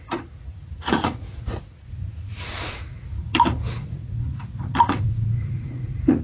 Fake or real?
fake